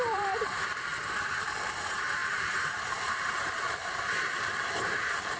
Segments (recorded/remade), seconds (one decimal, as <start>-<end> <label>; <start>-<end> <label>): 0.0-0.9 remade; 0.9-1.7 recorded; 1.7-5.4 remade